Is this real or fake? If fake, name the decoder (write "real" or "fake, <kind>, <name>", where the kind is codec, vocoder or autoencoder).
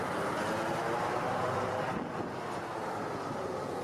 real